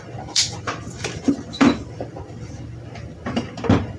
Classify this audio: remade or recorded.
remade